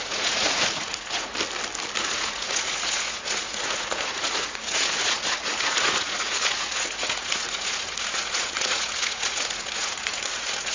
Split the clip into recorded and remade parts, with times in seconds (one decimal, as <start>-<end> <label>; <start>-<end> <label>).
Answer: 0.0-1.3 remade; 1.3-2.0 recorded; 2.0-10.7 remade